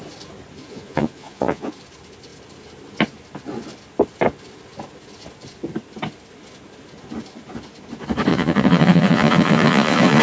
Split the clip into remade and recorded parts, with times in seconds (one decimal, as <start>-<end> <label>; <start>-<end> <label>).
0.0-0.6 recorded; 0.6-1.7 remade; 1.7-8.3 recorded; 8.3-10.2 remade